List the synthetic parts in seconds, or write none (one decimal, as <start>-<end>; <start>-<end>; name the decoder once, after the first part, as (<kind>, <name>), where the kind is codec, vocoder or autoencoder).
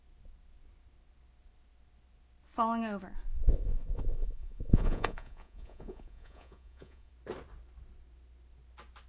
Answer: 3.3-7.1 (vocoder, Vocos)